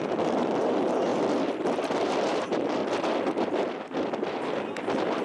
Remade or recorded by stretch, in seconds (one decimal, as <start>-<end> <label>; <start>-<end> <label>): 0.0-1.1 remade; 1.1-2.3 recorded; 2.3-2.8 remade; 2.8-5.2 recorded